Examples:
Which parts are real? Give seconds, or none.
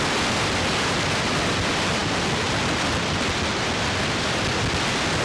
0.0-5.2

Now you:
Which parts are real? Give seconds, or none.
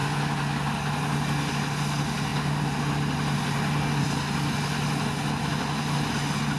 0.0-6.6